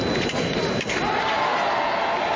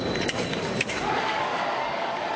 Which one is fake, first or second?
second